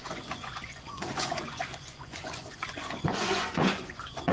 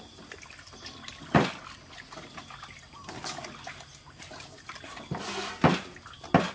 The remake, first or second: first